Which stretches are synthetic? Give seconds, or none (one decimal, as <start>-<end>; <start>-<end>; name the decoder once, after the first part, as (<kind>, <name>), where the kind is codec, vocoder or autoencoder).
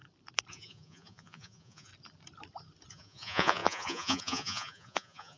0.5-1.9 (vocoder, Vocos); 2.9-5.4